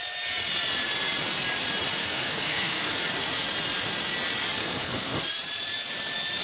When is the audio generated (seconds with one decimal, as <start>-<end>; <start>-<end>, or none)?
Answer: 2.0-2.9; 4.6-5.2